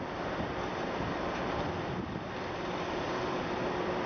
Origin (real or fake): real